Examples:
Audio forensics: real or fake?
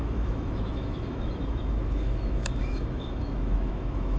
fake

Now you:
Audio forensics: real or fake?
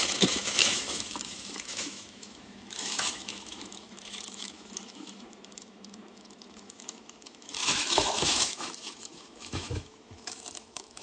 fake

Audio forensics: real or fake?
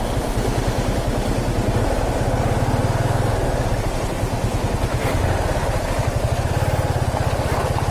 real